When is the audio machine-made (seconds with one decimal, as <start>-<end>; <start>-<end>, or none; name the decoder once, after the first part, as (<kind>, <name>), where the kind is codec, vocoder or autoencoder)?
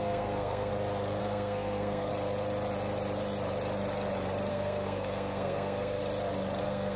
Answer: 0.0-0.7 (codec, SNAC); 1.2-2.1; 4.5-6.0; 6.6-7.0